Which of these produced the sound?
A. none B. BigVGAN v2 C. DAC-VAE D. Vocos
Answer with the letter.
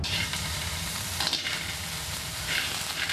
B